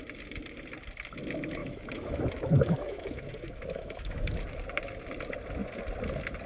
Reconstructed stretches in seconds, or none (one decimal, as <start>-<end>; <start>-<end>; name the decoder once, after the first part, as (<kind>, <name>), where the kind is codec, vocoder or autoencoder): 1.6-4.3 (autoencoder, DAC-VAE)